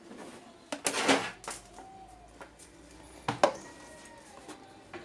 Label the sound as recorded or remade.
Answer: recorded